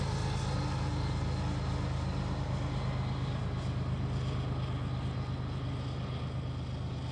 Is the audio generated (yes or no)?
no